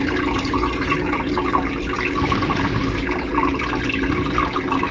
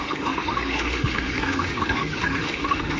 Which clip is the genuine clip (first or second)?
first